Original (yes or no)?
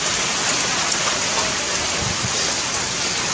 yes